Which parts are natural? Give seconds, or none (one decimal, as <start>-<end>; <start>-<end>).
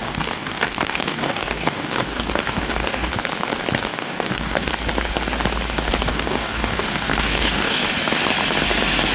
3.1-3.9; 4.7-6.1; 7.8-9.1